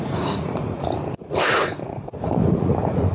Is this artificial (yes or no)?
yes